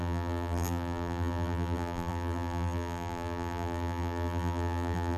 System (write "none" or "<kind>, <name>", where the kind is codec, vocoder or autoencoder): vocoder, BigVGAN v2